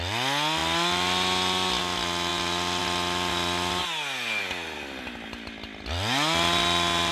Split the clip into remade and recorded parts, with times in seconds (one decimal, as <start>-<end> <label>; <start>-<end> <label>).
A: 0.0-7.1 recorded